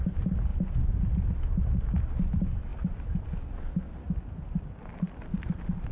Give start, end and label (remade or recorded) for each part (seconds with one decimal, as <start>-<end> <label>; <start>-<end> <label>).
0.0-0.5 remade; 0.5-1.6 recorded; 1.6-2.7 remade; 2.7-4.6 recorded; 4.6-5.9 remade